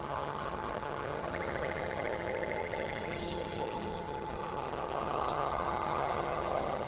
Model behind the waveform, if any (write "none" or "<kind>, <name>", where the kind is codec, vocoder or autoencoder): vocoder, HiFi-GAN